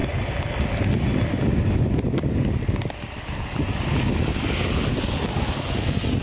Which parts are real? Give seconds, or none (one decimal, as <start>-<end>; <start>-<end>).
0.0-6.2